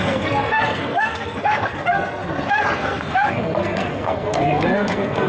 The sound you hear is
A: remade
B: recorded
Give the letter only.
A